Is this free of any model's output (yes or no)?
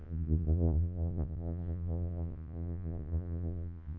no